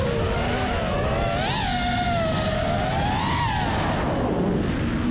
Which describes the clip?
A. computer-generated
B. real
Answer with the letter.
B